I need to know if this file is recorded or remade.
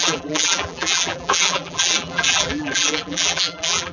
remade